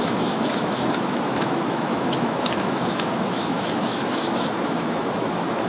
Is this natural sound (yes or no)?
no